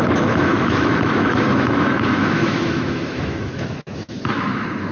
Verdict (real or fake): fake